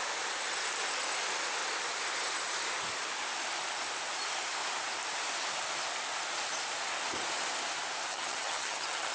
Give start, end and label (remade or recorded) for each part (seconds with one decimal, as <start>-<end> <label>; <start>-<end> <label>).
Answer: 0.0-8.1 recorded; 8.1-9.1 remade